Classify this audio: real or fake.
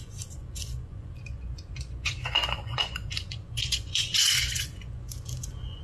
fake